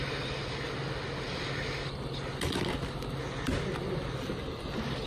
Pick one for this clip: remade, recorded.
recorded